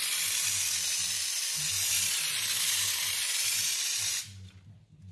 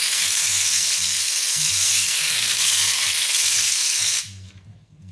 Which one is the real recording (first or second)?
first